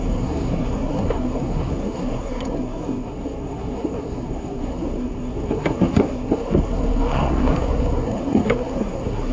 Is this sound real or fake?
fake